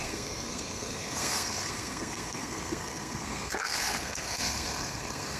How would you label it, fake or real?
fake